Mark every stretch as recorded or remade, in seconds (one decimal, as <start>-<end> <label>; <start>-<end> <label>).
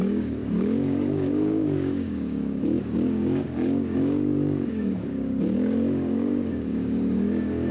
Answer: 0.0-7.7 remade